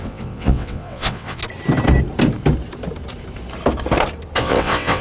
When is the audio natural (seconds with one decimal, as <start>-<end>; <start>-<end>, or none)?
1.4-4.4